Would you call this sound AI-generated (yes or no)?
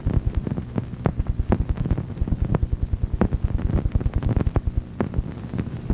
yes